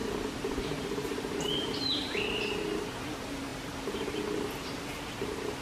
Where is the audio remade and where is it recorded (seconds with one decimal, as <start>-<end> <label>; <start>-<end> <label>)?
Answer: 0.0-2.2 remade; 2.2-5.6 recorded